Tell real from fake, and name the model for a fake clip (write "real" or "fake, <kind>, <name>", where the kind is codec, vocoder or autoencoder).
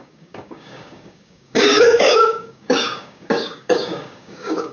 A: fake, codec, DAC